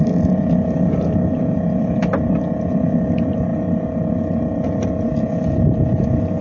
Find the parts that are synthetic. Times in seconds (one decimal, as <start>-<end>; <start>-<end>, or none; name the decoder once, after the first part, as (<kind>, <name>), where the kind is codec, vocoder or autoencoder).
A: none